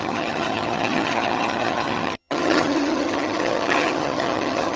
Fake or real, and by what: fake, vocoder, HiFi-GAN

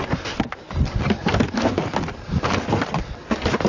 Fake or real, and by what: real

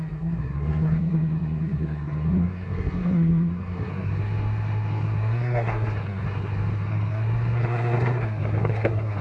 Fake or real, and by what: fake, codec, SNAC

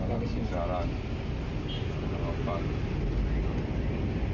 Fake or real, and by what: real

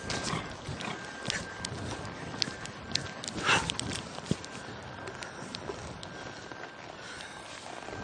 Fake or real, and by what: real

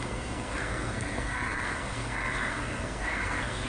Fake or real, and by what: fake, codec, SNAC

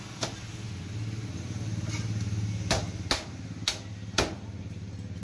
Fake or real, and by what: real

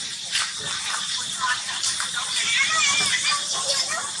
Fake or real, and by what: fake, vocoder, BigVGAN v2